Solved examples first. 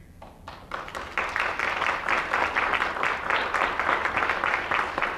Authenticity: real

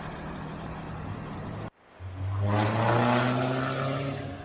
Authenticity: real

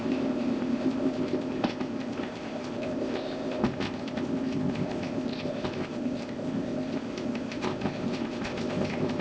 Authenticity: fake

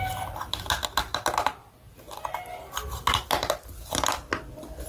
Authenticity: real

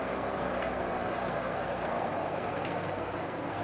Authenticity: fake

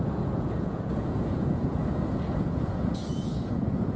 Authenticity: fake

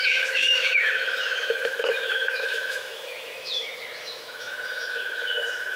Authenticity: fake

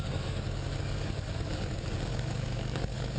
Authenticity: fake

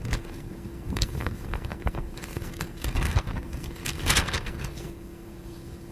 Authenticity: fake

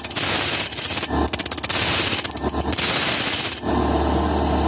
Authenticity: real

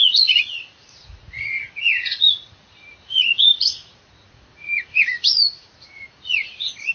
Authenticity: fake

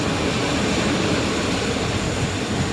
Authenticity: real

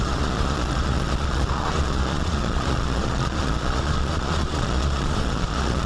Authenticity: fake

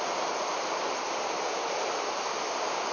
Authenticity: real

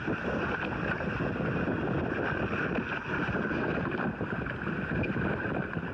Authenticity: real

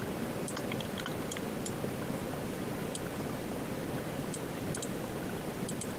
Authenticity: real